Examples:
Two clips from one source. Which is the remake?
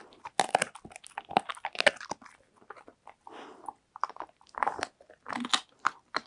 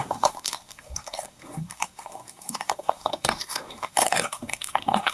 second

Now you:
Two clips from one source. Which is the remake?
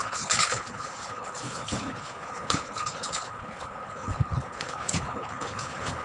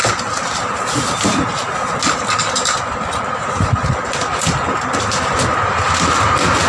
first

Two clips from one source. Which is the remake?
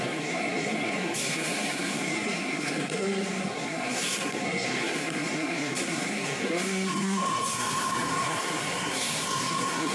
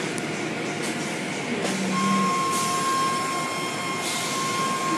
first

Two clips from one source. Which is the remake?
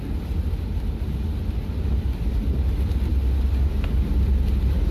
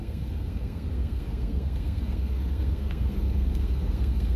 second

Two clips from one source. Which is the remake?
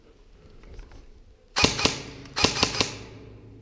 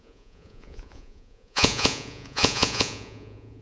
second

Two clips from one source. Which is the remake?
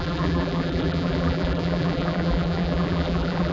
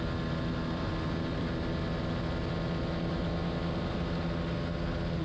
first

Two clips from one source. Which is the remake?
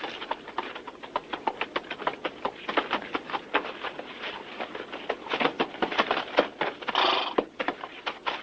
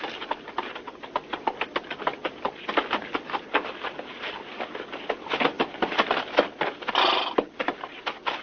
first